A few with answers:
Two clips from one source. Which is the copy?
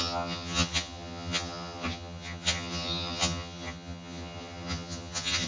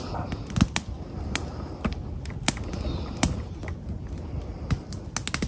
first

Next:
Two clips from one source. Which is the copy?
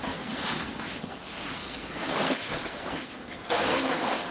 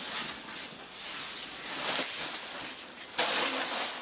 first